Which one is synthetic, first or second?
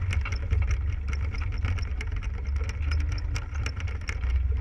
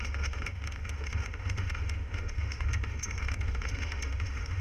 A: second